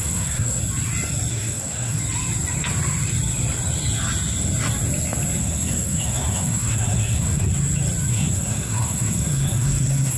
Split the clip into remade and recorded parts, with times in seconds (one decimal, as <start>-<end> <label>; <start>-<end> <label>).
0.0-0.6 remade; 0.6-1.3 recorded; 1.3-2.0 remade; 2.0-5.4 recorded; 5.4-7.5 remade; 7.5-8.1 recorded; 8.1-10.2 remade